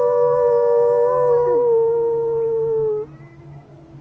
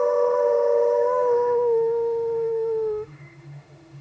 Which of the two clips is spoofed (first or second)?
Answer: second